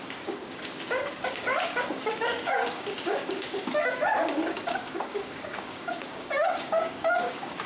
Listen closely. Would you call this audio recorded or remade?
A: remade